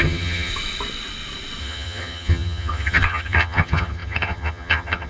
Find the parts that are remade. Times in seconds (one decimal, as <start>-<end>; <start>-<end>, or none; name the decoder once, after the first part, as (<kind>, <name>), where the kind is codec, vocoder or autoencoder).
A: 0.0-0.5 (vocoder, HiFi-GAN); 1.6-5.1